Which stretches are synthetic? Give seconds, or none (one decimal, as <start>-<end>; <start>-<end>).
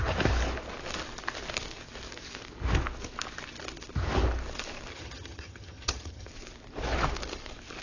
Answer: 4.9-6.3